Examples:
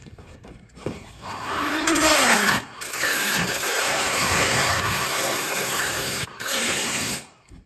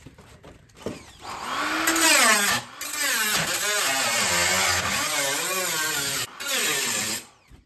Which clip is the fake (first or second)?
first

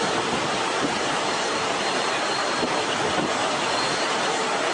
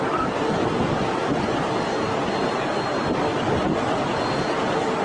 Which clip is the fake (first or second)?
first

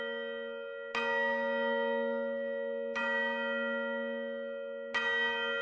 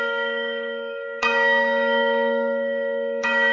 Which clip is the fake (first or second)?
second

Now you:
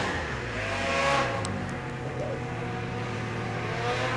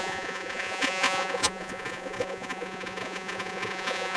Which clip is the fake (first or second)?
second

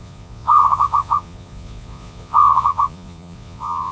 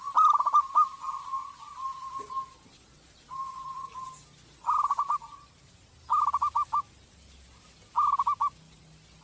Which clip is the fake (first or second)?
first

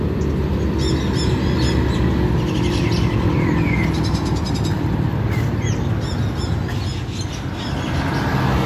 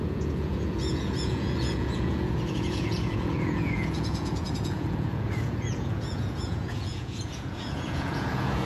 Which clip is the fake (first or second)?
second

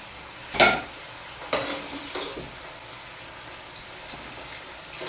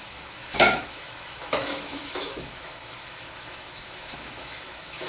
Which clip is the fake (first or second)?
second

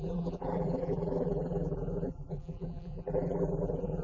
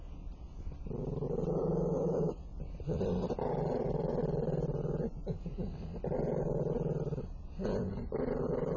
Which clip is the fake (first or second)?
first